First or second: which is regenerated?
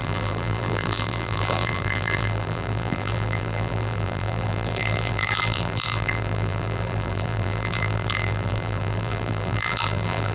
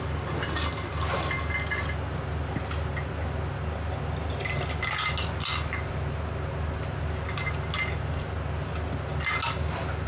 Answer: first